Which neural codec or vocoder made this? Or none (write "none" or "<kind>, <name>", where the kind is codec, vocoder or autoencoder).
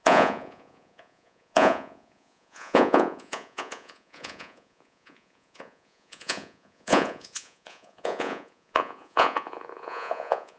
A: vocoder, Vocos